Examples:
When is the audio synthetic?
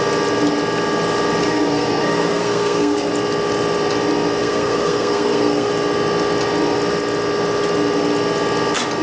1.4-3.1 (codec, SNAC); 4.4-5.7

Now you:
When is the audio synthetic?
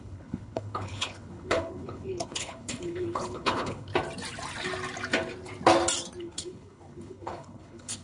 0.0-3.9 (codec, HILCodec); 6.2-8.0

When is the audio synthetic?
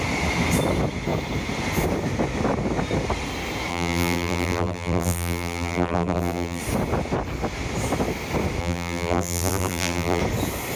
3.7-6.6 (vocoder, BigVGAN v2); 8.6-10.2